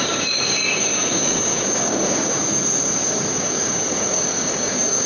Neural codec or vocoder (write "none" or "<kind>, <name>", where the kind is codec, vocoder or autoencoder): codec, DAC